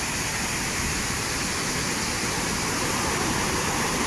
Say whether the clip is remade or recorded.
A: recorded